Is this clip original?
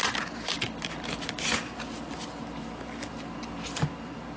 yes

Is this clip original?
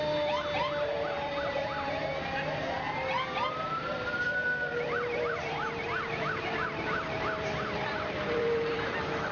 no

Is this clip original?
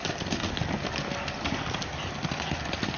yes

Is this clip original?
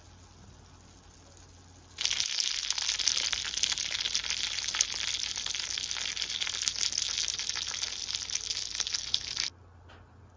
yes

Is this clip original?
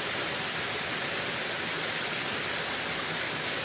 yes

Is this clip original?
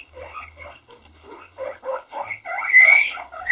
no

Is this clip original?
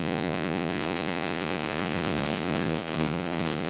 no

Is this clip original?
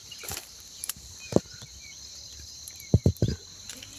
no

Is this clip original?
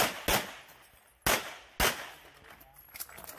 yes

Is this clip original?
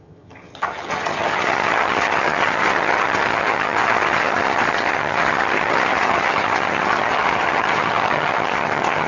no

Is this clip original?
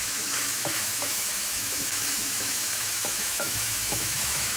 no